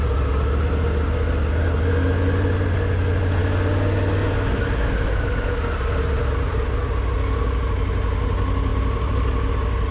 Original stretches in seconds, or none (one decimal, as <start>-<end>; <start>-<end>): 0.0-8.7; 9.5-9.9